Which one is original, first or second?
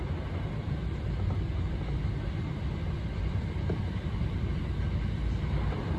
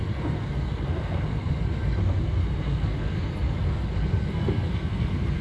first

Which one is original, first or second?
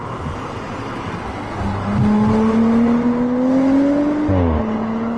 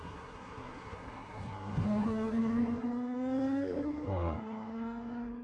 first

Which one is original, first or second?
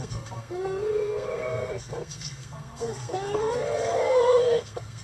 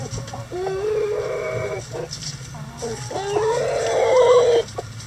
second